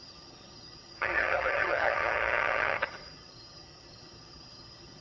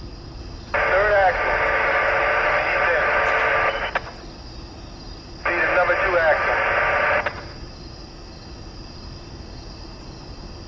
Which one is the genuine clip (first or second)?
second